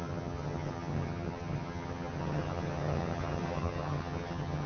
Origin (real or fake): fake